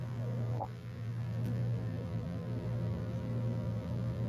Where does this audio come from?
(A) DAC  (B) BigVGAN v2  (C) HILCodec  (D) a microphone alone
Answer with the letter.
B